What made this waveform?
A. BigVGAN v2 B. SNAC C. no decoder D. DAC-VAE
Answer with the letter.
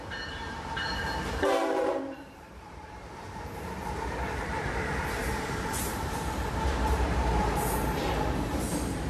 A